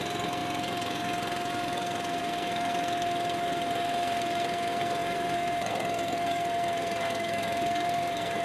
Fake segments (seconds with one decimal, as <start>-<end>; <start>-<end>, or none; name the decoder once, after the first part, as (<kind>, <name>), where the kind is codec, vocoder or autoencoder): 0.0-8.4 (codec, SNAC)